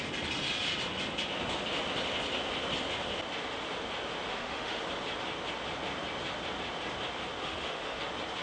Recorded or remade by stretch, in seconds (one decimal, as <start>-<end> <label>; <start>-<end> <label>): 0.0-4.3 recorded; 4.3-4.8 remade; 4.8-7.4 recorded; 7.4-8.0 remade; 8.0-8.4 recorded